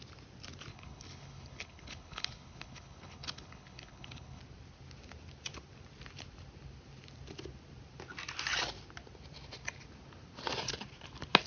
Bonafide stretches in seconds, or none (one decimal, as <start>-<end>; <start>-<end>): 0.0-0.7; 4.4-11.5